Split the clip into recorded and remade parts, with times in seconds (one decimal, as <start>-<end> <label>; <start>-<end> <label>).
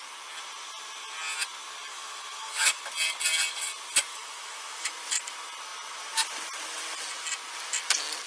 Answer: 0.0-1.9 recorded; 1.9-2.8 remade; 2.8-4.1 recorded; 4.1-4.9 remade; 4.9-8.3 recorded